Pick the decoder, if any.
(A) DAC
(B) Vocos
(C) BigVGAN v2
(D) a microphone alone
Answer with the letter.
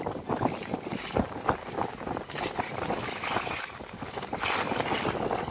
D